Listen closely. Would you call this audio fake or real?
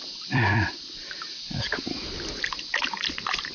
fake